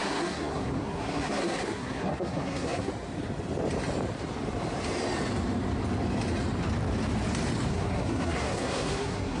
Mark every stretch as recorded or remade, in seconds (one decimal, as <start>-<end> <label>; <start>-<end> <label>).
0.0-2.9 remade; 2.9-7.7 recorded; 7.7-9.4 remade